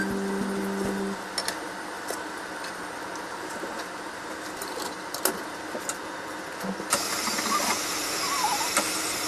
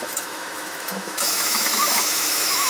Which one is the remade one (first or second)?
second